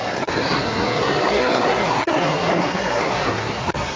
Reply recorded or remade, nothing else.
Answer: remade